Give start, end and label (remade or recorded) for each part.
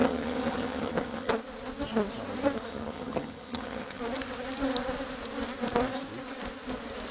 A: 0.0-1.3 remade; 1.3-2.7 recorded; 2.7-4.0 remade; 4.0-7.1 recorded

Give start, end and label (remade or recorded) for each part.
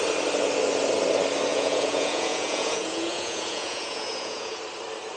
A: 0.0-1.5 recorded; 1.5-4.6 remade; 4.6-5.2 recorded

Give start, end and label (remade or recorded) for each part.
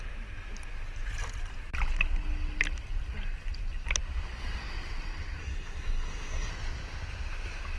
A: 0.0-5.4 recorded; 5.4-6.5 remade; 6.5-7.8 recorded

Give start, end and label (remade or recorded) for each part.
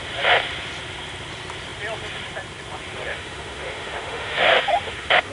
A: 0.0-3.1 recorded; 3.1-5.3 remade